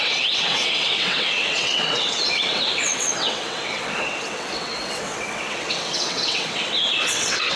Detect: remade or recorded remade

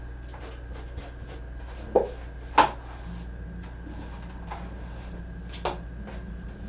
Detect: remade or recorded recorded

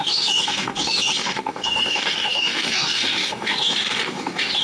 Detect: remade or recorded remade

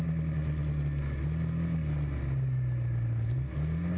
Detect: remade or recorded recorded